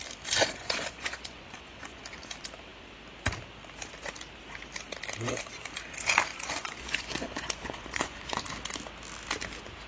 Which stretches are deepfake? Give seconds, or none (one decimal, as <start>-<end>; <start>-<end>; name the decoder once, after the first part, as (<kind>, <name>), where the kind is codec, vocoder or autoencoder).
0.4-2.0 (vocoder, Vocos); 6.3-8.4